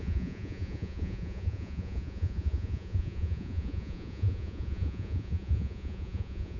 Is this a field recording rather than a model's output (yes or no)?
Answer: no